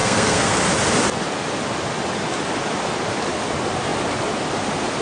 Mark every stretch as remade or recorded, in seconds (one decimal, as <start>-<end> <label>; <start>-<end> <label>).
0.0-0.6 remade; 0.6-5.0 recorded